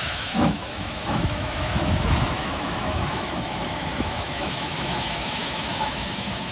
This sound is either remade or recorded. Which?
remade